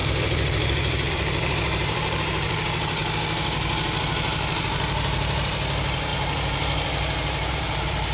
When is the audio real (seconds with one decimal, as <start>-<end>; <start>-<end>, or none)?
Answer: 3.0-4.0